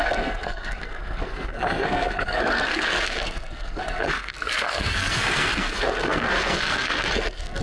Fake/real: fake